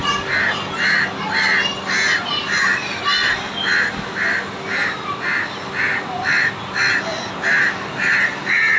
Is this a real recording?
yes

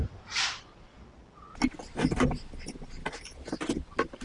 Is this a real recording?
yes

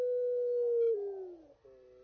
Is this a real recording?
yes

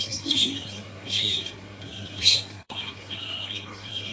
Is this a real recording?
no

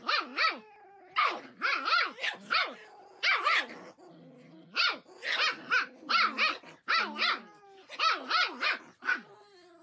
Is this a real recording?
yes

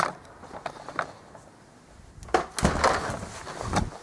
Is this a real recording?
yes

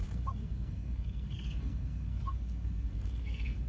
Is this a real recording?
no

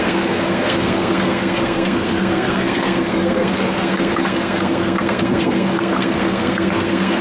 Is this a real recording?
no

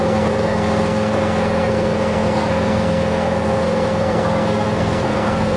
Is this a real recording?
no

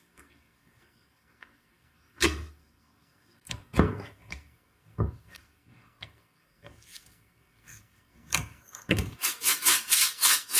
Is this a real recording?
no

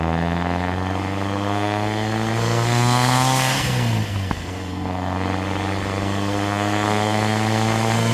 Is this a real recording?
no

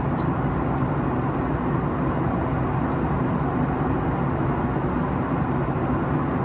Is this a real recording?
yes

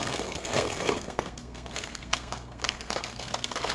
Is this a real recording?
no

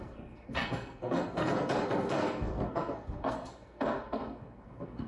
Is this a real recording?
no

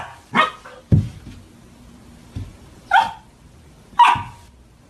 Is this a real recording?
yes